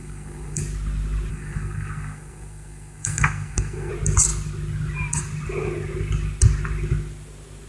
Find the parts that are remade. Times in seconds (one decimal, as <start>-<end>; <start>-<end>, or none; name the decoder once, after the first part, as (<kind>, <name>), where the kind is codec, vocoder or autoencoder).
0.0-0.6 (codec, SNAC); 1.3-3.9